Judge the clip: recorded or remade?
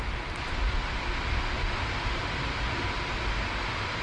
remade